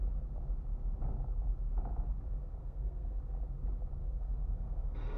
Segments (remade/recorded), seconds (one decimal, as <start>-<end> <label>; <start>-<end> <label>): 0.0-2.6 recorded; 2.6-3.2 remade; 3.2-4.0 recorded; 4.0-5.2 remade